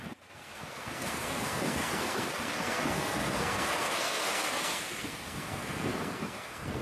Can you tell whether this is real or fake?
fake